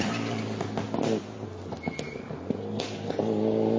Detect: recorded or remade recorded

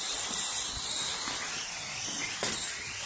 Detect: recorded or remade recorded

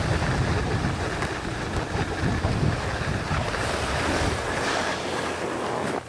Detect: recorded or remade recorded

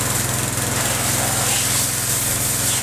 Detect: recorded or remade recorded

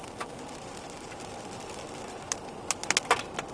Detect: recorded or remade recorded